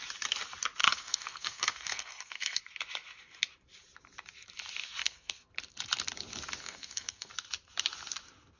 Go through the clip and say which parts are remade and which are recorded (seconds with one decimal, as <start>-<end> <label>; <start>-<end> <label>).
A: 0.0-0.8 recorded; 0.8-2.6 remade; 2.6-5.0 recorded; 5.0-5.5 remade; 5.5-6.6 recorded; 6.6-7.3 remade; 7.3-8.6 recorded